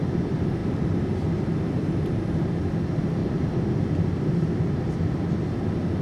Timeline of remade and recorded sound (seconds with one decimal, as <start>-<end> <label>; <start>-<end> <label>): 0.0-0.6 recorded; 0.6-1.5 remade; 1.5-3.2 recorded; 3.2-5.3 remade; 5.3-6.0 recorded